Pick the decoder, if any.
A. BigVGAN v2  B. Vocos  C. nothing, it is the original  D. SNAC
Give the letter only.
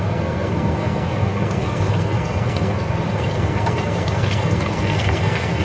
D